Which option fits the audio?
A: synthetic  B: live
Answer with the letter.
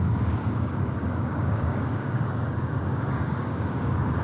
A